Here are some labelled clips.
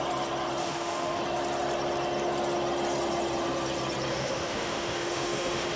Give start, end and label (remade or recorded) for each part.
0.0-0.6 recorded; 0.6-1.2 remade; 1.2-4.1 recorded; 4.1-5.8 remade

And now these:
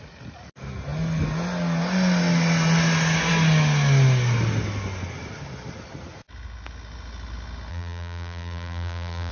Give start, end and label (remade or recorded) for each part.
0.0-7.7 recorded; 7.7-9.3 remade

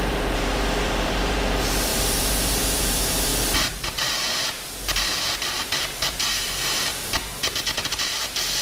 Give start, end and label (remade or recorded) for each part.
0.0-6.9 remade; 6.9-7.8 recorded; 7.8-8.6 remade

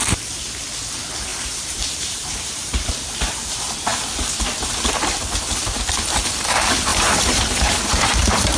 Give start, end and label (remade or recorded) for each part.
0.0-1.3 recorded; 1.3-2.9 remade; 2.9-6.9 recorded; 6.9-8.6 remade

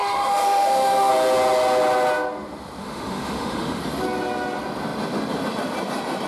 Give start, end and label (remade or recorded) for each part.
0.0-1.1 remade; 1.1-2.8 recorded; 2.8-3.8 remade; 3.8-6.3 recorded

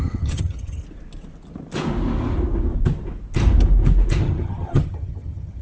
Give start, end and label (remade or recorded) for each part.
0.0-0.8 remade; 0.8-4.2 recorded; 4.2-5.6 remade

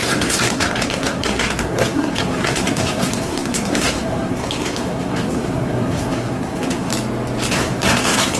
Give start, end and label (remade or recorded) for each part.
0.0-6.9 remade; 6.9-7.5 recorded; 7.5-8.4 remade

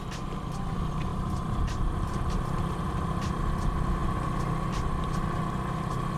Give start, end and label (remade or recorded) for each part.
0.0-1.1 recorded; 1.1-3.4 remade; 3.4-6.2 recorded